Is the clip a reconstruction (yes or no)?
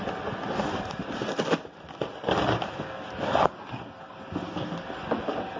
no